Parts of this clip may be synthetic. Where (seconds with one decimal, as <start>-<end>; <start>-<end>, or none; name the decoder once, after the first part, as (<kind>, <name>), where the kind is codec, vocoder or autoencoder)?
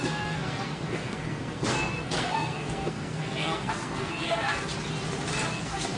0.0-4.7 (codec, SNAC); 5.5-6.0